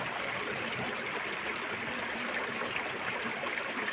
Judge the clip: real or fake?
real